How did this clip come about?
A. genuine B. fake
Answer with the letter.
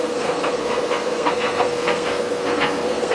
B